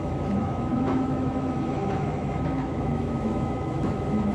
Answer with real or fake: fake